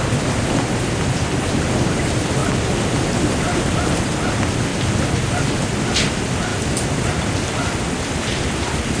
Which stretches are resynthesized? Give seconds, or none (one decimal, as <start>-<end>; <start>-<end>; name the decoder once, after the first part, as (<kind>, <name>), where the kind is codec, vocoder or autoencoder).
none